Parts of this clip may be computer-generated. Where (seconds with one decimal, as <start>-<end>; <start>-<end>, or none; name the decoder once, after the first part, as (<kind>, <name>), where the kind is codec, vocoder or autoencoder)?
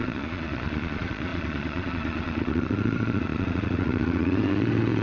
0.0-5.0 (vocoder, Vocos)